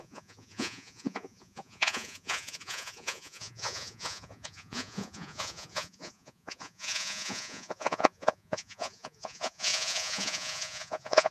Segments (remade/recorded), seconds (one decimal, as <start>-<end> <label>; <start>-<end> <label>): 0.0-11.3 remade